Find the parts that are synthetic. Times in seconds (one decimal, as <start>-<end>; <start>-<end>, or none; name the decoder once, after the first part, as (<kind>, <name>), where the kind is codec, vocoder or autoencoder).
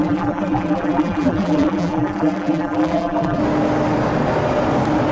0.0-3.4 (vocoder, BigVGAN v2)